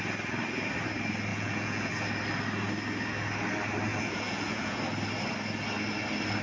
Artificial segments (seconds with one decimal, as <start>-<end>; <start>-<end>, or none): 1.3-1.9; 3.9-4.8